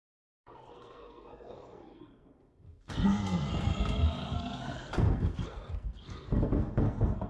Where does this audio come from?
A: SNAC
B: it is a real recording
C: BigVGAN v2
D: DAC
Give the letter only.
A